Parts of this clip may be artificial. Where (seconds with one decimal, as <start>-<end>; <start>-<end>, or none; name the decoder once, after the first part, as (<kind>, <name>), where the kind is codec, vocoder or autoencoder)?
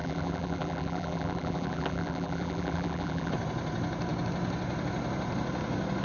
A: 0.0-3.3 (vocoder, BigVGAN v2)